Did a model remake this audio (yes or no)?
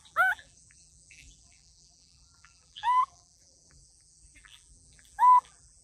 yes